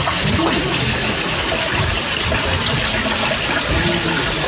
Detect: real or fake real